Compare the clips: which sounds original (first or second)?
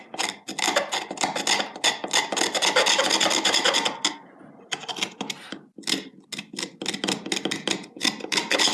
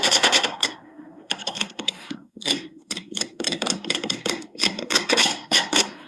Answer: first